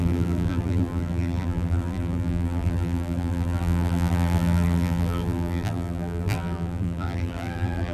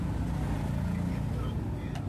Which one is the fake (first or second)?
first